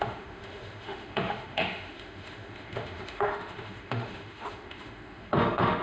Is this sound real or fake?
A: fake